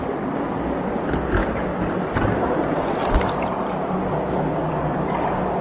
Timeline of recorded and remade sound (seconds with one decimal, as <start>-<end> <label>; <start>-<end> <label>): 0.0-5.6 recorded